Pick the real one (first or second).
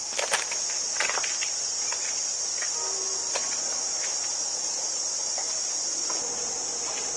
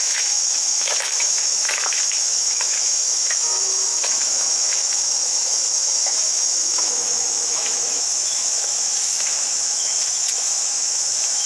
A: first